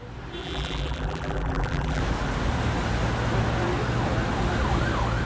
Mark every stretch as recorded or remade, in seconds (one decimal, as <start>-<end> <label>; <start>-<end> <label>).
0.0-0.4 recorded; 0.4-2.0 remade; 2.0-5.2 recorded